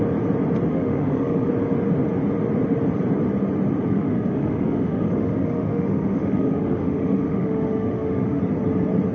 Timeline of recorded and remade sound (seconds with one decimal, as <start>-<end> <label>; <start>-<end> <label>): 0.0-0.7 recorded; 0.7-1.5 remade; 1.5-3.9 recorded; 3.9-8.4 remade; 8.4-9.1 recorded